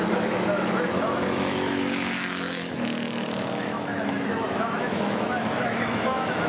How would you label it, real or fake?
fake